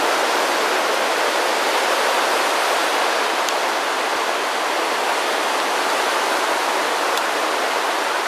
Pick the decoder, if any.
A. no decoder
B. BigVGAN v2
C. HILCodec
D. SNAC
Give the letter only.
A